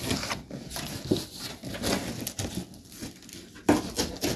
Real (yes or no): yes